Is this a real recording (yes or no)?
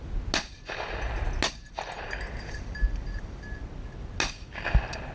yes